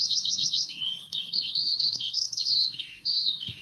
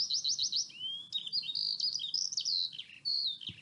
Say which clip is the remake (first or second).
first